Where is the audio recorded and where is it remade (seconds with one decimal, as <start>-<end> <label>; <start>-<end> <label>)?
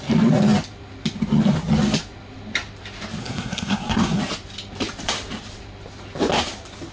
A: 0.0-3.2 recorded; 3.2-4.2 remade; 4.2-6.9 recorded